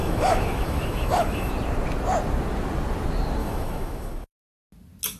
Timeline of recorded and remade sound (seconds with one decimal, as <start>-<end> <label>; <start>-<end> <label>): 0.0-1.5 remade; 1.5-3.4 recorded; 3.4-4.4 remade; 4.4-5.2 recorded